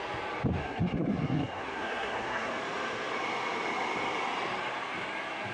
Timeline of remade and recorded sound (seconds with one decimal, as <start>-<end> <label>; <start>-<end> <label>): 0.0-0.6 recorded; 0.6-2.5 remade; 2.5-5.5 recorded